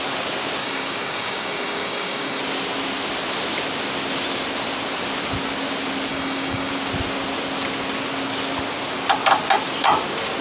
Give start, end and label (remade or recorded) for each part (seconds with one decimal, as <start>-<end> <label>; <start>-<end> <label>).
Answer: 0.0-0.6 recorded; 0.6-2.4 remade; 2.4-6.1 recorded; 6.1-6.7 remade; 6.7-10.4 recorded